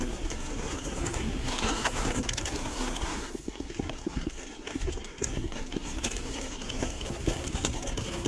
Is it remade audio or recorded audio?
remade